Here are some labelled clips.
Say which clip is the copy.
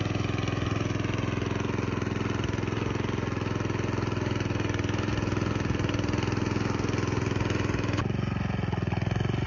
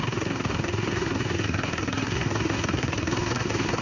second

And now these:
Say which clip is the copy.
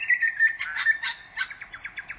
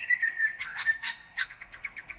second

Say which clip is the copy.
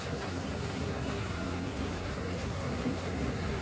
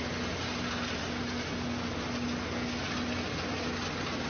first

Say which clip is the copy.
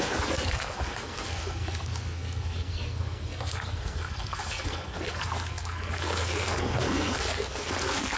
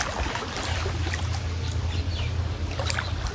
first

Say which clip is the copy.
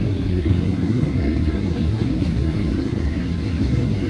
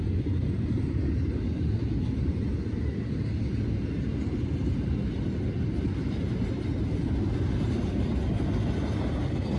first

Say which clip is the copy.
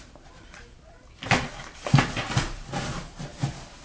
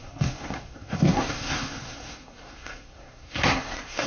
second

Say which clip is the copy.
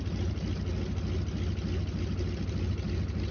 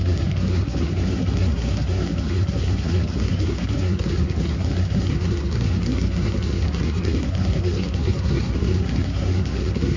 second